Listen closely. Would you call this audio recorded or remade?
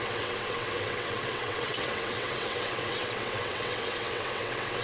remade